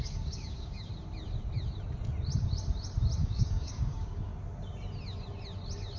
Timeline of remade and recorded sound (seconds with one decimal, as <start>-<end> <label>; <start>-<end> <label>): 0.0-0.9 remade; 0.9-3.2 recorded; 3.2-4.3 remade; 4.3-6.0 recorded